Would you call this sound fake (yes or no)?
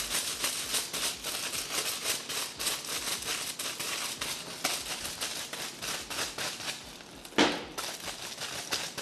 no